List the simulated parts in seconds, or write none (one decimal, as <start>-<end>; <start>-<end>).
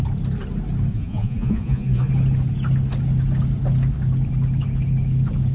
0.9-2.1